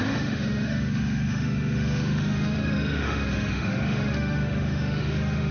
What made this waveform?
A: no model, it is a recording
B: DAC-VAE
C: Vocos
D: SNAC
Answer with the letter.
B